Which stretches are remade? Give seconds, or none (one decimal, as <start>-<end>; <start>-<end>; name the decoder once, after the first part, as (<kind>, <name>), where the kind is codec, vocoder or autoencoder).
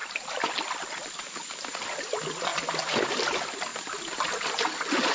0.6-3.7 (vocoder, BigVGAN v2)